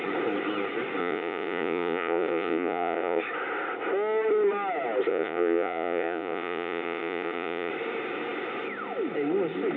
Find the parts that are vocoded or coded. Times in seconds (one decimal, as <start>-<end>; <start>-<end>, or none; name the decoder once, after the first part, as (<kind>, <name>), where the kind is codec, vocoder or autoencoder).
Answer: 1.0-3.2 (vocoder, Vocos); 5.1-7.7